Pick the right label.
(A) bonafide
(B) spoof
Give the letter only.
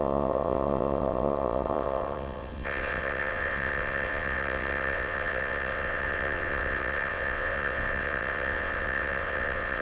B